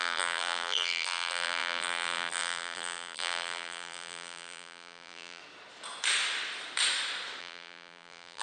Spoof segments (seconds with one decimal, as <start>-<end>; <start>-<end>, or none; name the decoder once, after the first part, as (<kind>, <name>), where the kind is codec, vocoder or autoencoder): 0.0-5.4 (vocoder, BigVGAN v2); 7.4-8.4